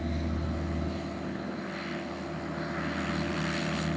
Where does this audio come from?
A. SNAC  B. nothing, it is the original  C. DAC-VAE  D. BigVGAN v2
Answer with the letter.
B